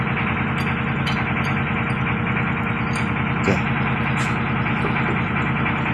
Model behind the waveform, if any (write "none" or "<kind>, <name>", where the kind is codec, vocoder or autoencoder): none